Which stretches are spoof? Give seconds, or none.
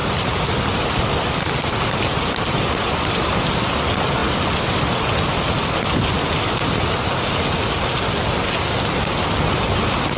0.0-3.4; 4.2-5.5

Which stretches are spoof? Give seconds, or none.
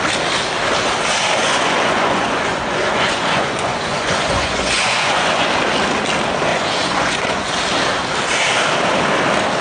1.4-5.5; 6.5-7.5